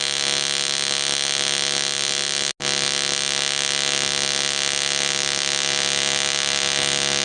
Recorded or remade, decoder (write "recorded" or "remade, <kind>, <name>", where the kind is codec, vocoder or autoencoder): recorded